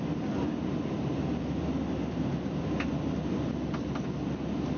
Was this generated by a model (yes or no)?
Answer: no